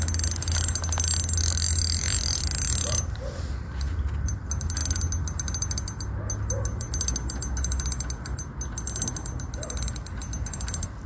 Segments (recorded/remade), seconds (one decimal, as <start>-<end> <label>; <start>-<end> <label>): 0.0-11.1 recorded